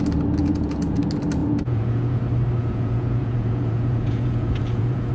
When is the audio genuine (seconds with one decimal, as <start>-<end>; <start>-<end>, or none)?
0.0-0.4; 1.0-1.4; 2.2-2.6